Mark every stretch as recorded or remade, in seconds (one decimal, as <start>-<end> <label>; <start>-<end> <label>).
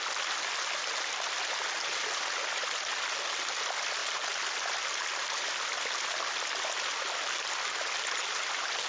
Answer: 0.0-8.9 recorded